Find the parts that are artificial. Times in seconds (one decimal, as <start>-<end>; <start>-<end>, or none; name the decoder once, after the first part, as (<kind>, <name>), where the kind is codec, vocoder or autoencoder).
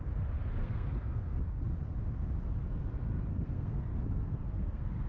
0.6-1.4 (codec, SNAC); 3.3-5.1